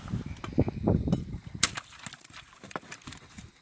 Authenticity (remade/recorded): recorded